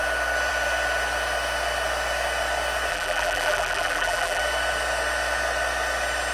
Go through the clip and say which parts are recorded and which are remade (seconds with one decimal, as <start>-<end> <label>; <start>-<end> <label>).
0.0-2.9 recorded; 2.9-4.4 remade; 4.4-6.3 recorded